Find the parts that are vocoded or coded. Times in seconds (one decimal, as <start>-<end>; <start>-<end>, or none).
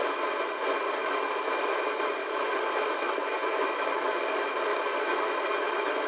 1.0-1.5; 2.2-4.1; 4.7-6.1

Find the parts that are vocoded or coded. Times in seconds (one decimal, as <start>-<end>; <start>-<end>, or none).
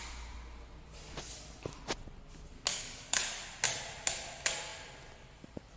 2.7-3.2